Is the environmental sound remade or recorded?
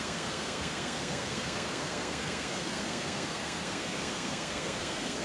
remade